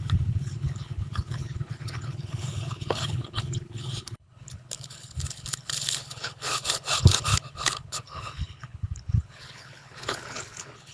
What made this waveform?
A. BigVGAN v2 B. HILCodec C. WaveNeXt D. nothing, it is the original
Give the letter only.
B